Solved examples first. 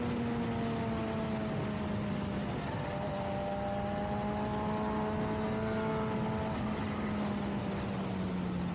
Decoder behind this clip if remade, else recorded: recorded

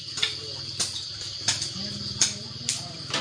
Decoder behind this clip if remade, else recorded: recorded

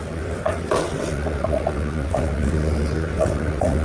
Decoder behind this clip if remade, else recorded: remade, vocoder, WaveNeXt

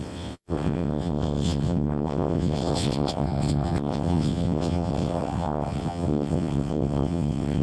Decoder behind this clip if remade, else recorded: remade, vocoder, WaveNeXt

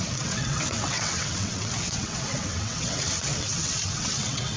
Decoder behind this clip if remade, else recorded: remade, vocoder, WaveNeXt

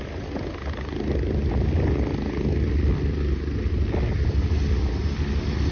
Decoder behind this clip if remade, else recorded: recorded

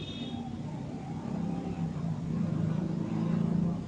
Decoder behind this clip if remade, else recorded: recorded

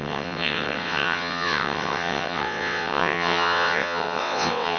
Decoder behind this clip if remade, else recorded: remade, vocoder, WaveNeXt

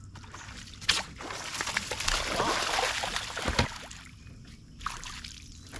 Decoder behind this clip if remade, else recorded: recorded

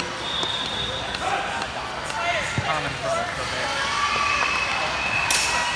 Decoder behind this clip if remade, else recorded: recorded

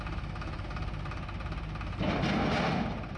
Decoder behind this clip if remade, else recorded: recorded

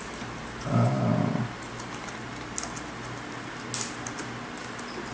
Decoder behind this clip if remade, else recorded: recorded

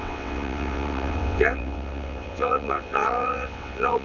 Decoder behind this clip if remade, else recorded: remade, vocoder, WaveNeXt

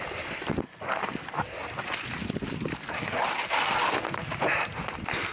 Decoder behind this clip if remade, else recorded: recorded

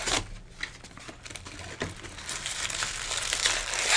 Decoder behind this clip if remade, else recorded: recorded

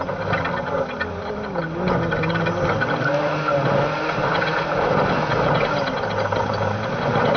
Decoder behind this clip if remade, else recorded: recorded